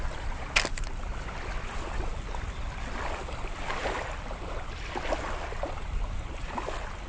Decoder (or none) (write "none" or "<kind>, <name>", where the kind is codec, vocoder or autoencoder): none